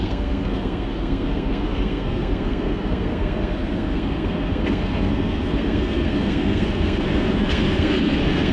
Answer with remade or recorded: remade